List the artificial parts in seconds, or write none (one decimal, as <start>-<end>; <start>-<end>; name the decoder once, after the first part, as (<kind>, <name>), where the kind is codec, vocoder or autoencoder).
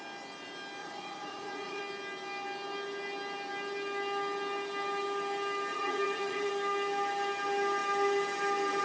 0.8-1.8 (vocoder, Vocos); 5.7-6.5